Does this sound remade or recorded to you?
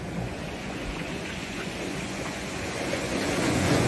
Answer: remade